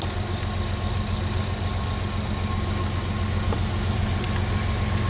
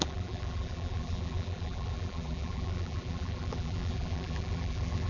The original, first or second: first